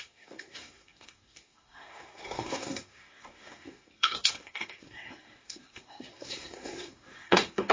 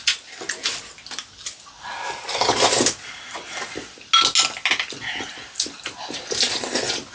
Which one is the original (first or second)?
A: second